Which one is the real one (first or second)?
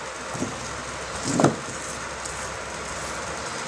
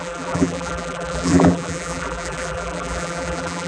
first